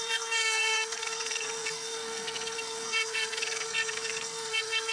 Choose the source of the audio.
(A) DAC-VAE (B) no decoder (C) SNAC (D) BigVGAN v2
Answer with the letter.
C